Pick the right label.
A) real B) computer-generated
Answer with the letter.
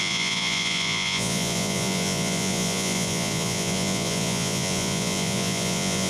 B